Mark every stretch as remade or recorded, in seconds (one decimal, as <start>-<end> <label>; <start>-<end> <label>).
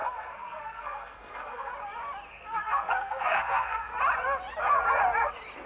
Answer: 0.0-1.7 remade; 1.7-2.3 recorded; 2.3-3.9 remade; 3.9-5.7 recorded